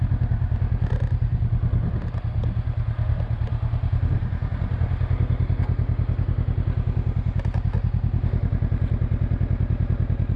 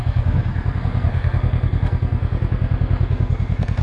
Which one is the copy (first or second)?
second